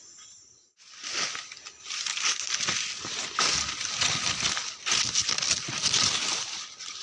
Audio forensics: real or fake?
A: real